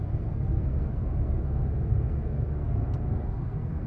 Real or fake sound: fake